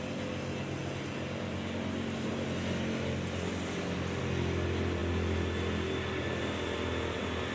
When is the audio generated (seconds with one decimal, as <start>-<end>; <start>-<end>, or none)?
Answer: none